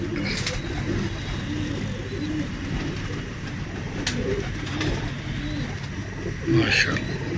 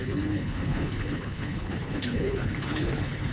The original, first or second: first